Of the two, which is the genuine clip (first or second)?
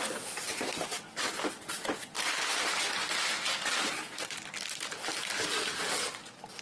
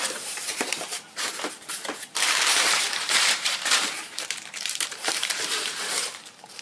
first